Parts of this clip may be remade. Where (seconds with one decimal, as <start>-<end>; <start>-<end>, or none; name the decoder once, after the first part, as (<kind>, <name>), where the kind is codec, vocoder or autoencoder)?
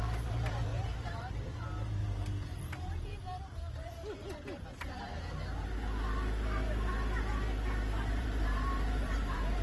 0.0-2.0 (vocoder, BigVGAN v2); 3.4-4.0; 8.2-9.6